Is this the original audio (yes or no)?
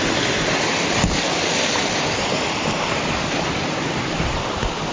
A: yes